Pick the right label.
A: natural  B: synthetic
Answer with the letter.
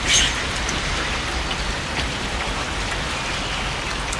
B